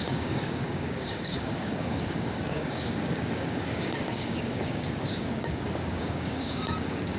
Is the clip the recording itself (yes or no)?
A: no